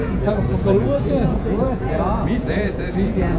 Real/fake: fake